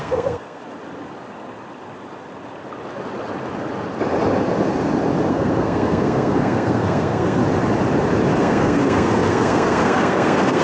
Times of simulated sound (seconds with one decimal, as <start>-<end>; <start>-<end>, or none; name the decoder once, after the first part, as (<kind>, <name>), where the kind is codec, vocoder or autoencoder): 0.0-0.6 (codec, SNAC); 5.3-7.4; 8.4-10.6